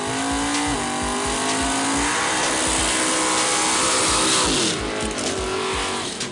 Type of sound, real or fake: real